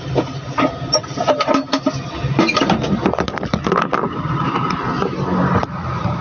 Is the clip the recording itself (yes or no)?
yes